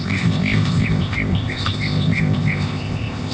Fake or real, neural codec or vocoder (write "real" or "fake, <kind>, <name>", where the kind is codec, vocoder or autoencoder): fake, codec, ZipCodec